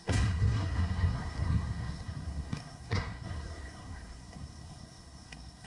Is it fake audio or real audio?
fake